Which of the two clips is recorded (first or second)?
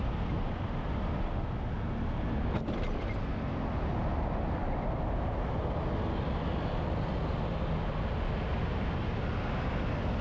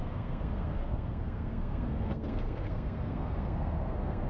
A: first